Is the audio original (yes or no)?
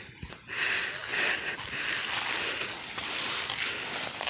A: yes